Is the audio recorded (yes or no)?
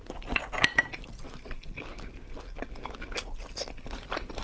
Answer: yes